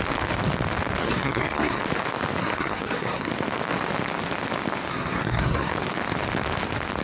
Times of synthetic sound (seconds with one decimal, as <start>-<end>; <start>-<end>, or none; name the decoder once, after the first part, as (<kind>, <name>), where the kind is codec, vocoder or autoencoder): 1.0-1.8 (codec, SNAC); 2.4-3.3; 4.9-5.7